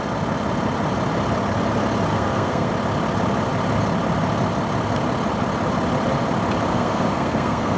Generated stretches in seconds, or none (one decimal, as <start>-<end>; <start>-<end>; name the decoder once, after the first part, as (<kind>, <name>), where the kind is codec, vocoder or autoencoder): 2.1-2.7 (codec, SNAC); 6.7-7.8